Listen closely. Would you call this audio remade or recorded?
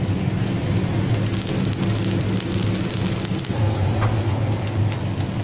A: recorded